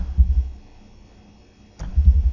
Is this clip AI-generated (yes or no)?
no